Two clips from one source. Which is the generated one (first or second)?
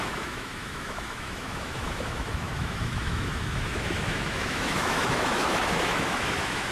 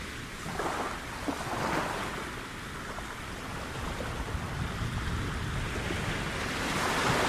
first